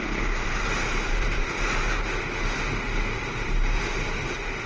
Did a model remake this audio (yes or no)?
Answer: no